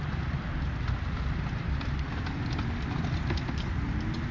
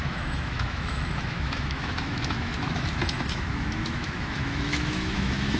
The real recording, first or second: first